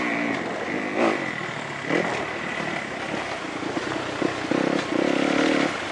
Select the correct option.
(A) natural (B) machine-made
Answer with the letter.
A